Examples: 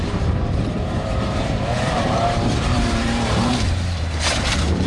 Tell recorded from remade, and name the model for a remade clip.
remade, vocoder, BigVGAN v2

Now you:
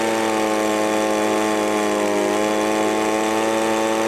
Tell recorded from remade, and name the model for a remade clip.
recorded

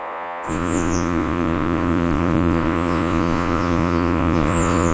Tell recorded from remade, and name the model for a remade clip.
remade, vocoder, Vocos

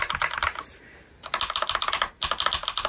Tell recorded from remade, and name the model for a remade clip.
recorded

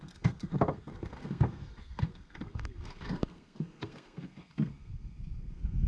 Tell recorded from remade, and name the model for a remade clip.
remade, codec, SNAC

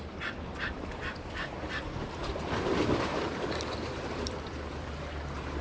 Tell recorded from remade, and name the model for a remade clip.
remade, vocoder, BigVGAN v2